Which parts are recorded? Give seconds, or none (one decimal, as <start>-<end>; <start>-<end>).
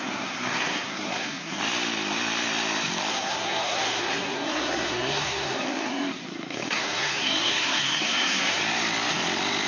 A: 1.6-3.1; 8.6-9.7